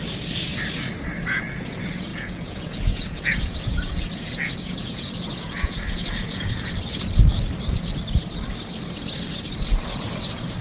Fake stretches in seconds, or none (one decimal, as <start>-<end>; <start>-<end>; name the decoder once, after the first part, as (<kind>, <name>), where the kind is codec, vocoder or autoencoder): 2.1-6.7 (vocoder, Vocos)